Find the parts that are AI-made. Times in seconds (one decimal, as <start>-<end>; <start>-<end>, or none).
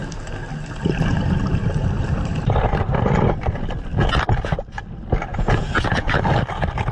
5.3-6.2